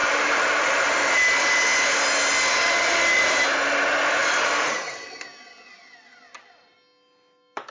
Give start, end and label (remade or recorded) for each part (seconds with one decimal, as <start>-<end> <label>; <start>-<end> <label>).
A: 0.0-1.1 remade; 1.1-2.5 recorded; 2.5-3.4 remade; 3.4-4.2 recorded; 4.2-4.7 remade; 4.7-7.7 recorded